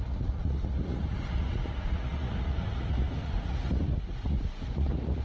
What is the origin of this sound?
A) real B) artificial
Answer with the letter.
B